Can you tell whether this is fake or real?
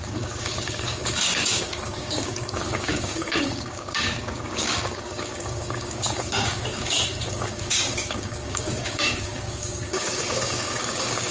fake